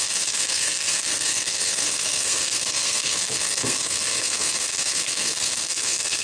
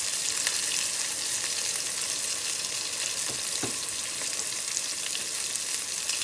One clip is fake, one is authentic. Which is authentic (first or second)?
second